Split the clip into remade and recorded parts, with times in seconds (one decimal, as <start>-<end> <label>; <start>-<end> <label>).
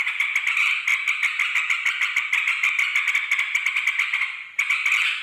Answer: 0.0-5.2 recorded